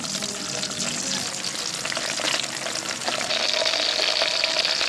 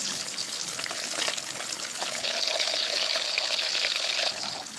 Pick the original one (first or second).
first